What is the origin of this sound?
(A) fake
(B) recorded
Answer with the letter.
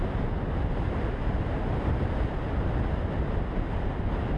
B